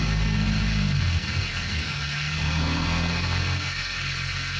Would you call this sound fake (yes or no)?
yes